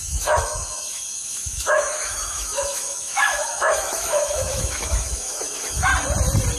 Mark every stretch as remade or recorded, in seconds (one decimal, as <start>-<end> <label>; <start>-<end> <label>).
0.0-5.9 remade; 5.9-6.6 recorded